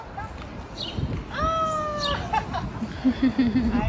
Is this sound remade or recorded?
recorded